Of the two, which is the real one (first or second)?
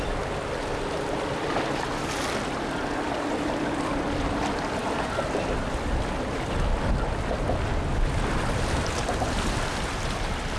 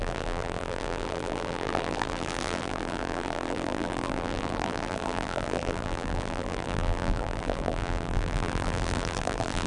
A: first